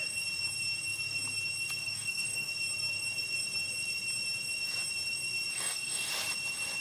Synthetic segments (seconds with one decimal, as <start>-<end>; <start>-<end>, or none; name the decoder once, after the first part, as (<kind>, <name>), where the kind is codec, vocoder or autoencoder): 1.8-2.5 (codec, DAC); 5.5-6.1